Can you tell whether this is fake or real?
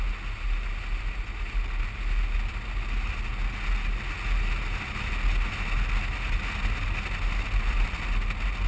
real